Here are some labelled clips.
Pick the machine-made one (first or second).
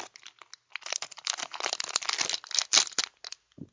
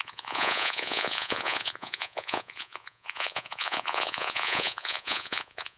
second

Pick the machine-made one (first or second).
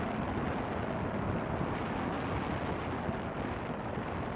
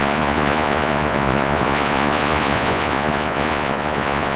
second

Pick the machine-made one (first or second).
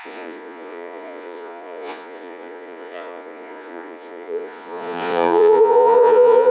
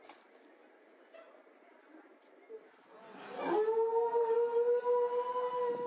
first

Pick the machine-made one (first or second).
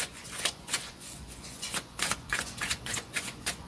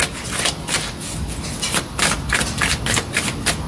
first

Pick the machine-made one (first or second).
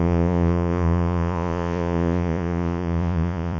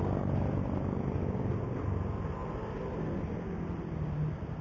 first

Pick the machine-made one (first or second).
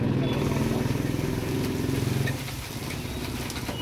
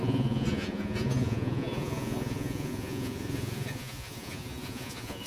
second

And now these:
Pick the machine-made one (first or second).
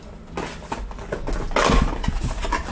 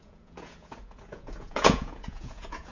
second